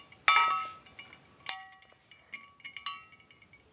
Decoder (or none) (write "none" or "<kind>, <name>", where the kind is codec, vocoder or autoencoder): none